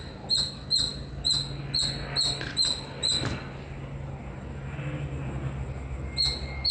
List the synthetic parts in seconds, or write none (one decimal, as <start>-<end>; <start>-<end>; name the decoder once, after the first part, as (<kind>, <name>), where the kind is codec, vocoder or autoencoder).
none